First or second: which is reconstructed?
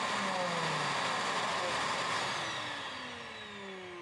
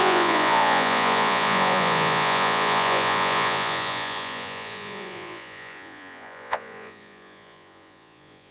second